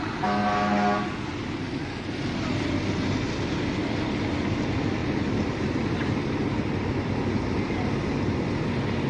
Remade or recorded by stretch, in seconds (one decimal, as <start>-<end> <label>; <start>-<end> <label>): 0.0-5.0 recorded; 5.0-7.8 remade; 7.8-9.1 recorded